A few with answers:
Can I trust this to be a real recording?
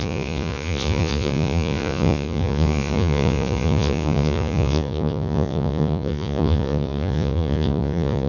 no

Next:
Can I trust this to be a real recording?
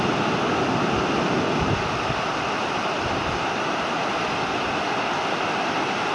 yes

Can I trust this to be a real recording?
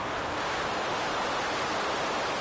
yes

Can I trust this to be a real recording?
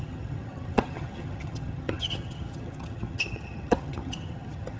no